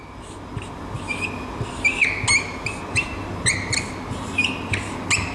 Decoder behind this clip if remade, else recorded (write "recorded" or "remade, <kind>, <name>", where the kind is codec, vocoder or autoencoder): recorded